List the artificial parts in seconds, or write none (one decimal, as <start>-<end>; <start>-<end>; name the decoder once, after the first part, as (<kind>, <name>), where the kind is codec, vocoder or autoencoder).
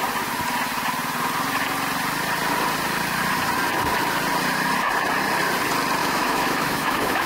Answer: 6.0-7.3 (autoencoder, DAC-VAE)